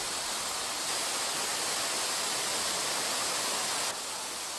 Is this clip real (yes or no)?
yes